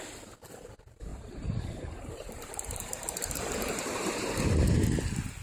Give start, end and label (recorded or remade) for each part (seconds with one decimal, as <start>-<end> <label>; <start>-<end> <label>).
0.0-1.1 recorded; 1.1-4.3 remade; 4.3-5.4 recorded